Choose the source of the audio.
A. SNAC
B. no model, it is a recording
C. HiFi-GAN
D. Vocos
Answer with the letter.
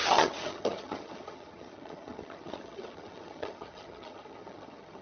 C